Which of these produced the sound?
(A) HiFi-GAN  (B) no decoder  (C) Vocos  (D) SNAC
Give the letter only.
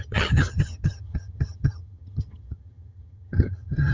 A